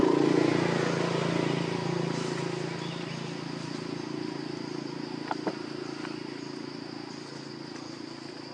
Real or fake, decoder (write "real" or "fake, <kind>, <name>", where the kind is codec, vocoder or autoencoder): real